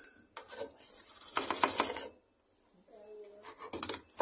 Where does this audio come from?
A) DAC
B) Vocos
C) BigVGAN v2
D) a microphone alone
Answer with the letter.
D